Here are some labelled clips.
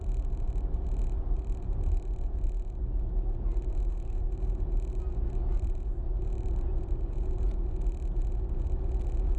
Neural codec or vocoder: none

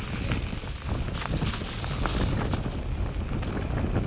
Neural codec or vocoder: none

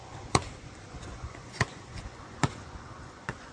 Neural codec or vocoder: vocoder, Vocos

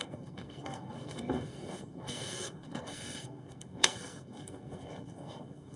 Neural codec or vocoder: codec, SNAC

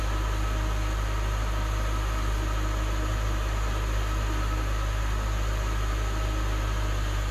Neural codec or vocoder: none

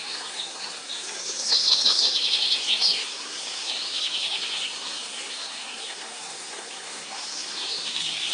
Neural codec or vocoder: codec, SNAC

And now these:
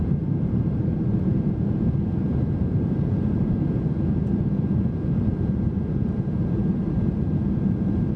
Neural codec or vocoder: vocoder, BigVGAN v2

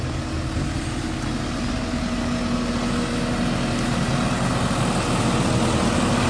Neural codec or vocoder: none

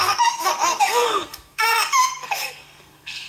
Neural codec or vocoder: codec, SNAC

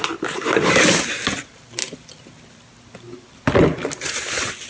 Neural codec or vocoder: none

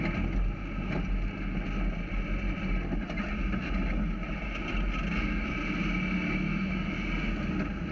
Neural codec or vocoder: none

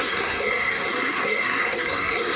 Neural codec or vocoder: codec, SNAC